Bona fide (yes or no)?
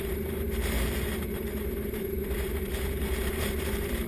no